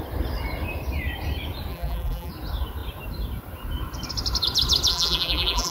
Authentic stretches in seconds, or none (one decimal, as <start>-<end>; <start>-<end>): 0.0-1.7; 2.3-4.9